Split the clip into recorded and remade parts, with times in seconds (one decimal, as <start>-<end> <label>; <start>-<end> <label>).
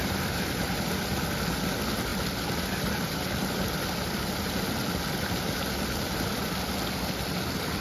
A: 0.0-7.8 recorded